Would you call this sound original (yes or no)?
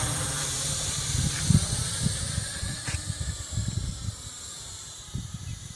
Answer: no